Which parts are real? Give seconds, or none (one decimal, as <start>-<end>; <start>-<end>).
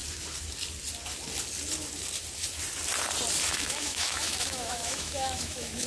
0.0-3.5